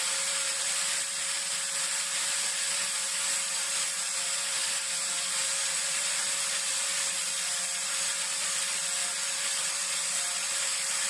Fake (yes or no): yes